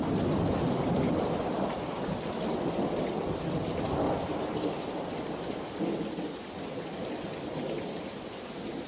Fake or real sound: real